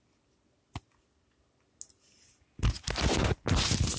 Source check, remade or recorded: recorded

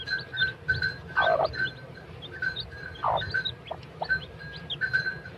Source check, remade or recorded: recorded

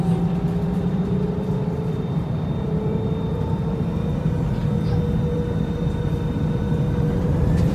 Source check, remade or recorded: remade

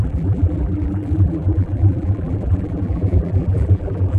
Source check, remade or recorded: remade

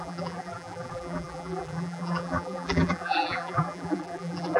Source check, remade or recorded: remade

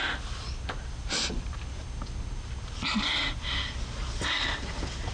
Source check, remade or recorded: recorded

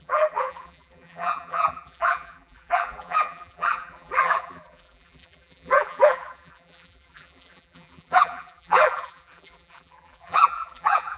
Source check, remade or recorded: remade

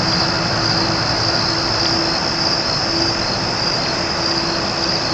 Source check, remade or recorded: recorded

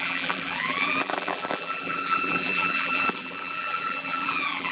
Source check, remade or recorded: remade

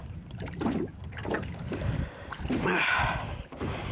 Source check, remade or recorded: remade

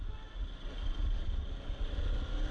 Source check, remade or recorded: recorded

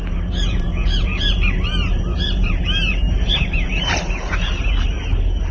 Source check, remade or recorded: remade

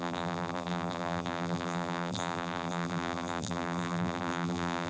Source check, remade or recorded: remade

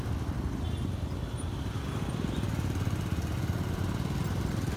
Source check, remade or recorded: recorded